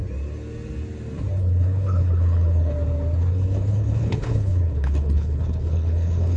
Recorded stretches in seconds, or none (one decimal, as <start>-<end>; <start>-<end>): 0.0-1.4; 2.7-3.3